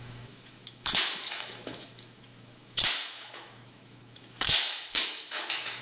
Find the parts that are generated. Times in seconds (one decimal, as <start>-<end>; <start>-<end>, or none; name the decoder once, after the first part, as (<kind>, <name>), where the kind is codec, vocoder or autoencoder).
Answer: 0.0-5.8 (autoencoder, DAC-VAE)